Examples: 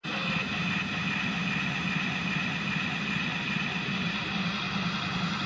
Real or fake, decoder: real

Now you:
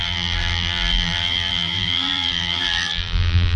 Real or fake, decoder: fake, vocoder, BigVGAN v2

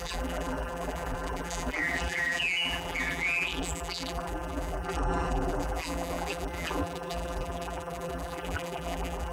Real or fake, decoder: fake, vocoder, BigVGAN v2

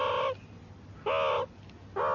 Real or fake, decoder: real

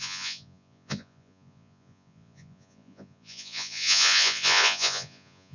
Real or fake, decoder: fake, vocoder, Vocos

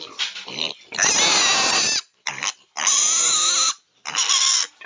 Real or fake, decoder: real